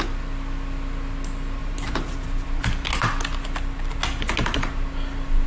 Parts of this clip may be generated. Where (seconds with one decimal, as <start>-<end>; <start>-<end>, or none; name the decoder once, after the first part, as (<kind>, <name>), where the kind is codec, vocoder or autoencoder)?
1.6-2.6 (vocoder, BigVGAN v2)